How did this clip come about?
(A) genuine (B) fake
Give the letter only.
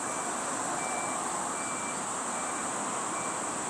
A